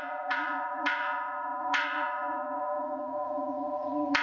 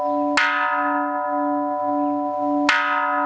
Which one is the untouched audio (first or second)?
second